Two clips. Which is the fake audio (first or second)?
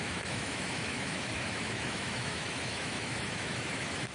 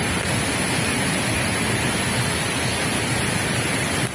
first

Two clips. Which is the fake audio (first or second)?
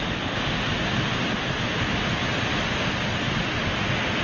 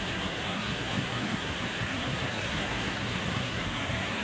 second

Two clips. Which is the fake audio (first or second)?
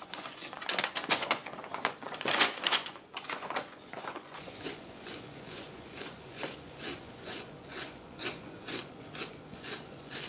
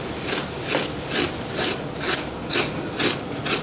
first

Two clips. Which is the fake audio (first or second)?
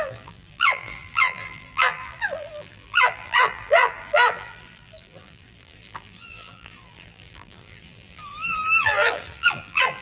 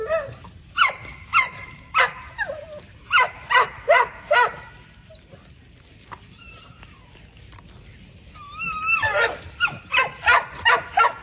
first